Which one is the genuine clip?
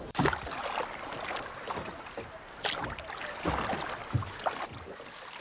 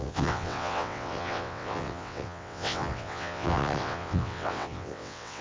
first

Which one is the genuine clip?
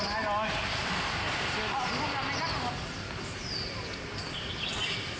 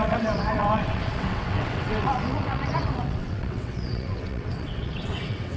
first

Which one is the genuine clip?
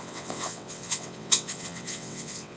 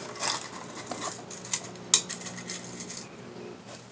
second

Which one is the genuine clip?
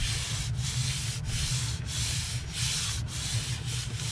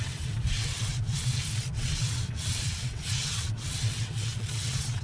first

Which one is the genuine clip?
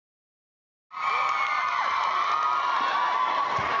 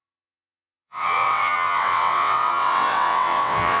first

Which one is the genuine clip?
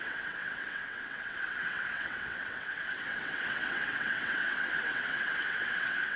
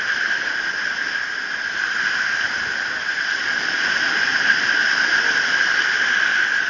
second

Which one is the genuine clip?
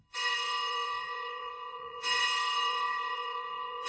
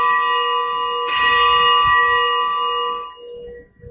second